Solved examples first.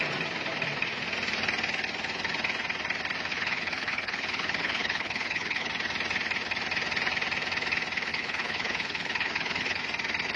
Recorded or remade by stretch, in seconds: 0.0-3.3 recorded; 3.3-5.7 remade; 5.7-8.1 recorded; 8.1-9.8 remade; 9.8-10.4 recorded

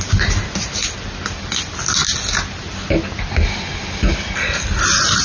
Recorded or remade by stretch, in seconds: 0.0-5.2 recorded